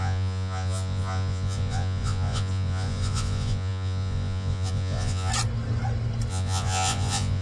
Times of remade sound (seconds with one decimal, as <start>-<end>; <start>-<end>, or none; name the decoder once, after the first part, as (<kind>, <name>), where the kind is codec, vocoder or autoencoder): 0.0-5.3 (vocoder, Vocos); 6.3-7.4